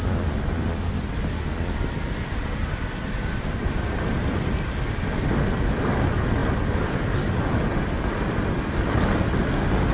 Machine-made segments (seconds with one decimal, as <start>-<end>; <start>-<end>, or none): 2.6-4.2

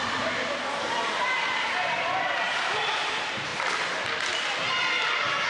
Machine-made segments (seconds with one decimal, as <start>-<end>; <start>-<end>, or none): 0.0-3.5